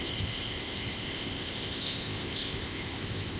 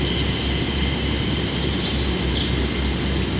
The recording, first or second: second